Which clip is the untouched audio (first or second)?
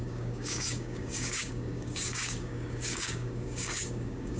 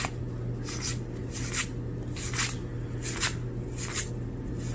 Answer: second